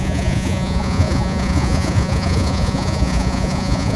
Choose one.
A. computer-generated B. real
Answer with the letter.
A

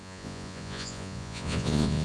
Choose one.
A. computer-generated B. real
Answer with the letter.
A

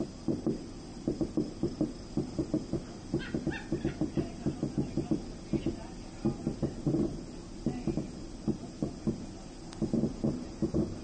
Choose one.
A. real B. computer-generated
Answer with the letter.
A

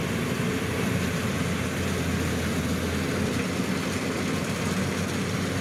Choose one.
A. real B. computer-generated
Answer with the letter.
A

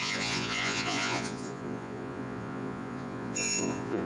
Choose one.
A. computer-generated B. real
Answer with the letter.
A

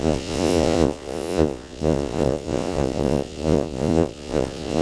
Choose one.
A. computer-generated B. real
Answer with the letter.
A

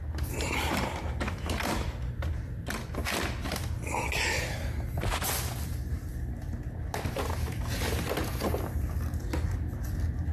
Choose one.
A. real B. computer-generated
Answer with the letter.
A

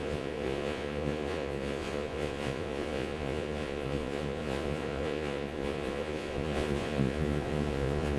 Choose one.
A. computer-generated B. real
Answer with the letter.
A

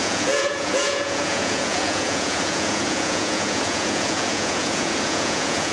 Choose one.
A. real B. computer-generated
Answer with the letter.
B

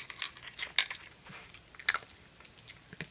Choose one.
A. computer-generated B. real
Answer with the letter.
B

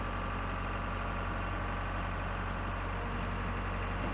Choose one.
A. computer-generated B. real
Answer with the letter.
B